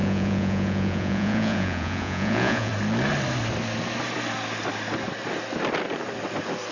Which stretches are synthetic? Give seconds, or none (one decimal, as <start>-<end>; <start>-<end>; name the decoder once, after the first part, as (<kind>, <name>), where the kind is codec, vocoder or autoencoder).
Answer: 0.0-2.7 (vocoder, Vocos)